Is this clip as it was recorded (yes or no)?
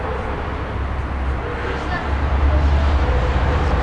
yes